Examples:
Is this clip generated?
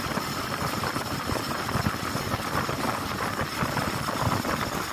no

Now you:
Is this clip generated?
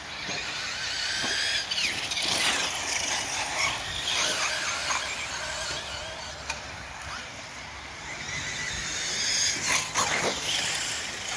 no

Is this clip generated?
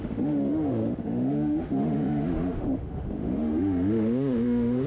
yes